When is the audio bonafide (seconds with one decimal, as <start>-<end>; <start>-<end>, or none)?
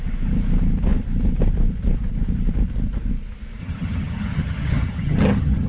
0.0-3.6